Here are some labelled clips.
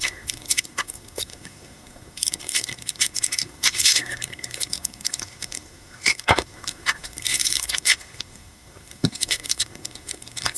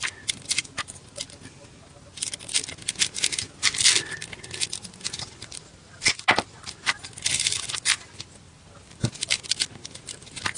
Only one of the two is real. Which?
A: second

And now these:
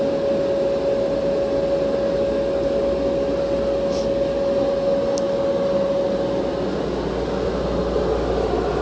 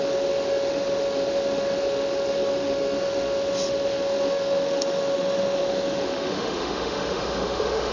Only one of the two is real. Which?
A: first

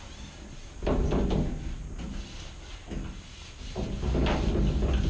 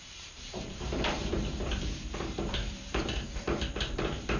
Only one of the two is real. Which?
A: first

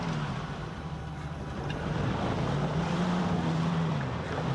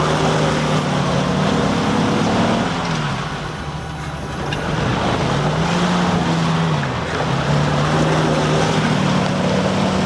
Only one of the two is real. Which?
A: second